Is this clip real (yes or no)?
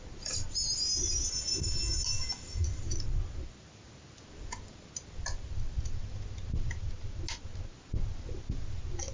yes